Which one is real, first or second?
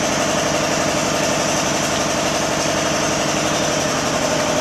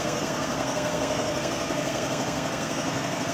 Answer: first